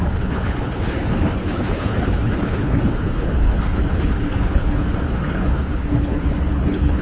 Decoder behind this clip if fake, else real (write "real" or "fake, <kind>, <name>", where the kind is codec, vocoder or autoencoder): fake, codec, HILCodec